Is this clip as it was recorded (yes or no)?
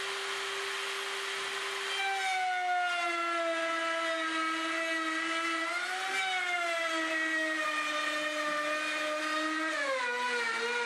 yes